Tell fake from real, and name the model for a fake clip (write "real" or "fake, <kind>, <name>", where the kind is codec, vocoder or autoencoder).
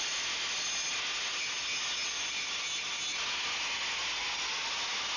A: real